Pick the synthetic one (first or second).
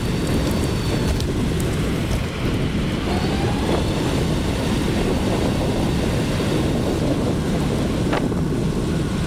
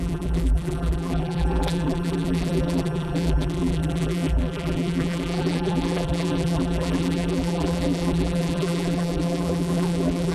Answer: second